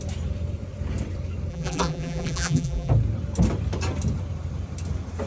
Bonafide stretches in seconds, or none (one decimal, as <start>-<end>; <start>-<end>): 0.0-1.5; 2.9-5.3